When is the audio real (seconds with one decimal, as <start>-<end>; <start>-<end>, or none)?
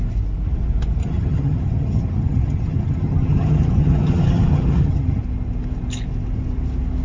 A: 0.0-1.0; 5.2-7.0